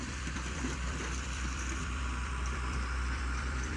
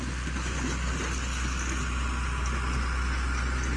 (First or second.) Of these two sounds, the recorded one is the second